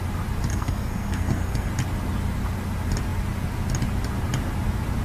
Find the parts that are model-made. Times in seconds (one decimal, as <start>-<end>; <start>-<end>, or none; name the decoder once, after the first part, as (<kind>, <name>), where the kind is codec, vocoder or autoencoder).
0.5-1.7 (codec, SNAC)